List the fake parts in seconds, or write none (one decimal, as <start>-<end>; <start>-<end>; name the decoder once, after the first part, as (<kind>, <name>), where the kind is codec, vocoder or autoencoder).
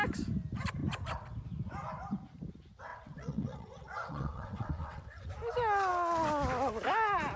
2.9-5.3 (vocoder, WaveNeXt)